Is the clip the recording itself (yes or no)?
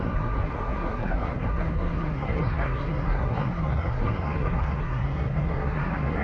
no